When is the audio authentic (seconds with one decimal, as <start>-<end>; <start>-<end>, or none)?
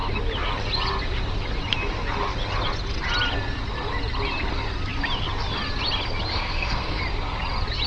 0.0-6.3; 7.0-7.9